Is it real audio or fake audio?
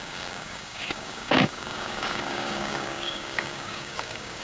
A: fake